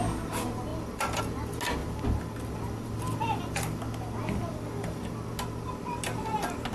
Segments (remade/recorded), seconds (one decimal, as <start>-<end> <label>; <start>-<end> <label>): 0.0-0.7 recorded; 0.7-1.2 remade; 1.2-1.8 recorded; 1.8-3.8 remade; 3.8-4.5 recorded; 4.5-5.0 remade; 5.0-6.7 recorded